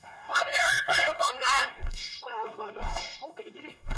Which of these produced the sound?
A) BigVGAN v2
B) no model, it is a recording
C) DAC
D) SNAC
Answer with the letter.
D